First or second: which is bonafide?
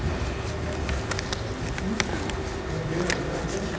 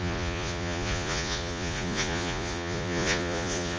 first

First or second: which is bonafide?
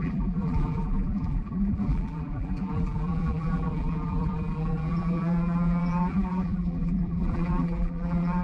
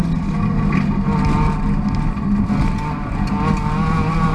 second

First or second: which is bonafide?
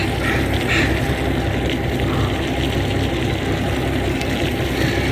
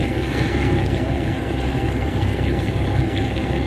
first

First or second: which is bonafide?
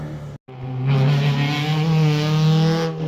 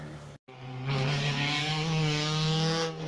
first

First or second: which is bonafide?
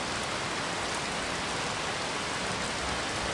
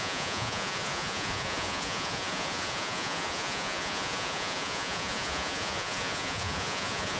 first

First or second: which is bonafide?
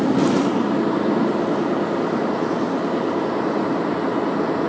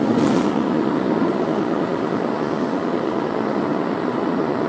first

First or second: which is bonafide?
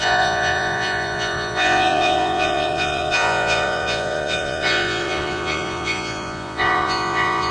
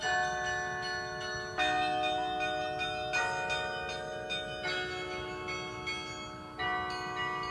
second